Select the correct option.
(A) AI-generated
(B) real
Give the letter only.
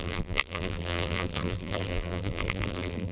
A